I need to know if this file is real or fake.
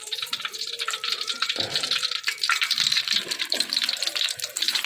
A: fake